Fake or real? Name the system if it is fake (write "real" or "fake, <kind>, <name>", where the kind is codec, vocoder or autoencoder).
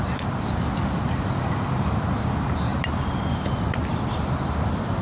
real